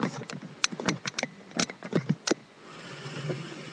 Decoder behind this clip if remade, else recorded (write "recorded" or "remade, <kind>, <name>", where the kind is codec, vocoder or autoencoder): remade, vocoder, Vocos